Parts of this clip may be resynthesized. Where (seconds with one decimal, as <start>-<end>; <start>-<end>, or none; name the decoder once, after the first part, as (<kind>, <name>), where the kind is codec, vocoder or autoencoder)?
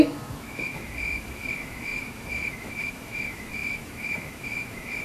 0.0-5.0 (autoencoder, DAC-VAE)